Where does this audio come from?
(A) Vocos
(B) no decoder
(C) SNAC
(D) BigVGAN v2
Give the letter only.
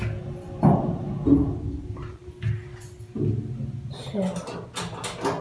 B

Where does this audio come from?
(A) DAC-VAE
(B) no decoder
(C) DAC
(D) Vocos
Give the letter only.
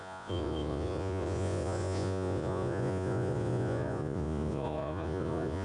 D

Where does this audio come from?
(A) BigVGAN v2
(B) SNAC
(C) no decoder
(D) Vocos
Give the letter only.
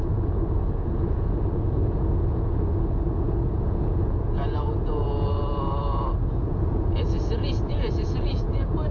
D